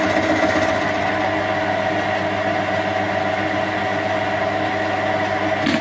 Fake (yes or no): no